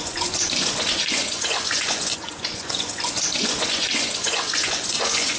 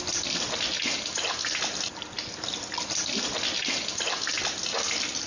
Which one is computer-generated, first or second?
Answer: first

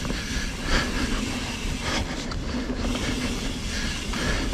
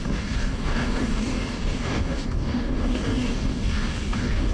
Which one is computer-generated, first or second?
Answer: second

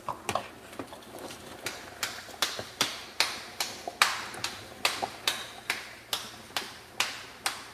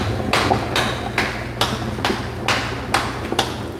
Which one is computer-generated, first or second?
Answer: first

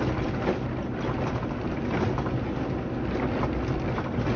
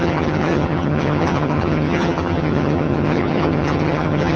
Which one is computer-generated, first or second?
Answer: second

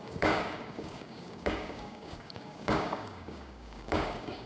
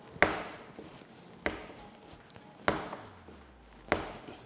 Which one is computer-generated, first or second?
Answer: first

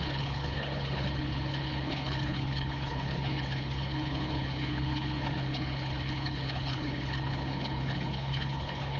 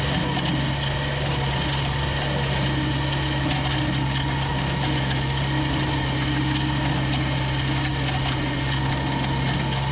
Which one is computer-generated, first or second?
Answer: first